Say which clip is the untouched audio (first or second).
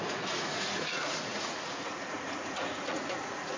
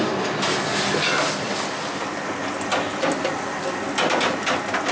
second